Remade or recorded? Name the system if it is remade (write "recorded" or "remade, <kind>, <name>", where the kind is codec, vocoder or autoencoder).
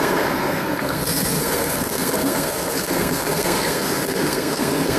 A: remade, codec, SNAC